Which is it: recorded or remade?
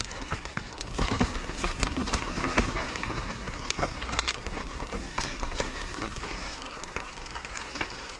remade